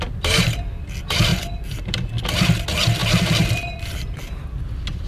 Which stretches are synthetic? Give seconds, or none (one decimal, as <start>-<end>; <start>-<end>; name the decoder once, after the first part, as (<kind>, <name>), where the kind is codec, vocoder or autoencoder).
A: 1.3-2.1 (vocoder, BigVGAN v2); 3.0-4.6